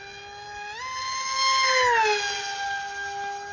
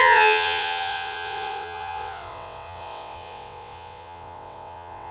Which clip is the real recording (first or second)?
first